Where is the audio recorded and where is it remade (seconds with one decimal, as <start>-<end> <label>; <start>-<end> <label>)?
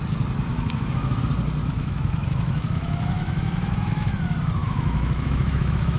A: 0.0-0.5 recorded; 0.5-1.2 remade; 1.2-1.6 recorded; 1.6-4.1 remade; 4.1-4.6 recorded; 4.6-6.0 remade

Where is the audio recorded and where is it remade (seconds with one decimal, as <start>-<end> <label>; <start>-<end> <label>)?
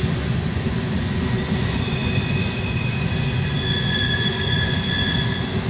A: 0.0-5.7 remade